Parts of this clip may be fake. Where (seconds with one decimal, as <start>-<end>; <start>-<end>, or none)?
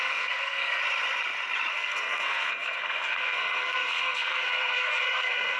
0.0-0.8; 1.7-5.6